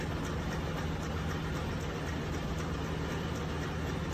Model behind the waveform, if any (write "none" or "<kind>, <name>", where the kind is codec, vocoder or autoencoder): none